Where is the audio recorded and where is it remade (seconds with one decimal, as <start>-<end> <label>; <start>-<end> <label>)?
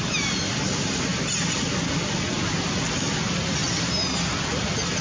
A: 0.0-5.0 recorded